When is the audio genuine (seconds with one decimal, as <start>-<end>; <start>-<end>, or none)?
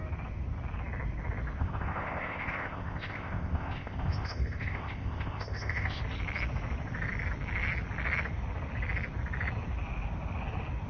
0.0-1.6; 6.0-10.9